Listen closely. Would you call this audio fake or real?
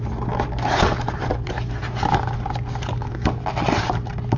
real